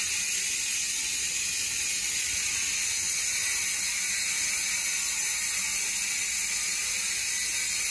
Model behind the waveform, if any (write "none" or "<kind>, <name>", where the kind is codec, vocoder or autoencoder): none